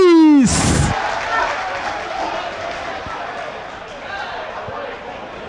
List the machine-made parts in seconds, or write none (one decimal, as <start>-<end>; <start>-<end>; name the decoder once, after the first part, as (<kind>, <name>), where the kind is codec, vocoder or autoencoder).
0.5-3.8 (vocoder, BigVGAN v2)